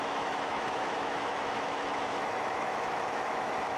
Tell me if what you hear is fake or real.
fake